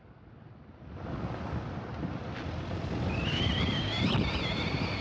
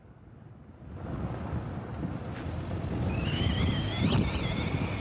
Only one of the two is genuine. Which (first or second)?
second